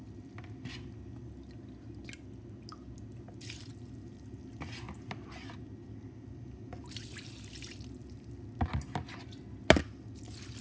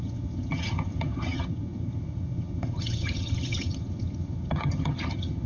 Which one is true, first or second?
first